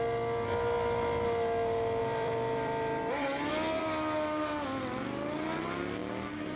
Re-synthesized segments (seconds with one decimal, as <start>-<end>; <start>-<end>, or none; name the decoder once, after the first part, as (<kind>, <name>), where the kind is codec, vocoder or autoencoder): 2.0-3.8 (vocoder, BigVGAN v2)